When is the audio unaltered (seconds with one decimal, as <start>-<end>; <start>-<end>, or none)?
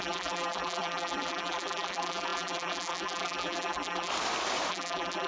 4.1-4.7